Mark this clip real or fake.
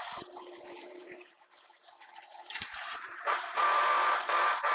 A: fake